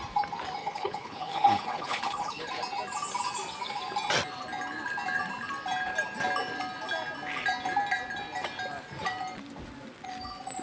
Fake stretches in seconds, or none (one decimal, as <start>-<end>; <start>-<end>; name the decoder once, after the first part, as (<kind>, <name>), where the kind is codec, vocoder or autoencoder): 0.6-2.5 (codec, HILCodec)